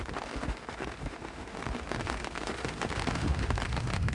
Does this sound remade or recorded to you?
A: remade